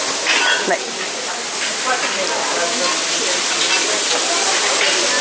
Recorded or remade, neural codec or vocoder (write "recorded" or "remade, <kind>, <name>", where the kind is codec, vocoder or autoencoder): recorded